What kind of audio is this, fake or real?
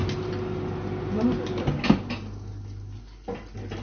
real